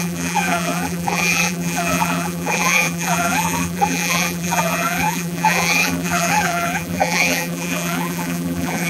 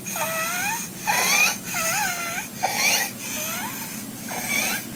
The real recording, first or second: second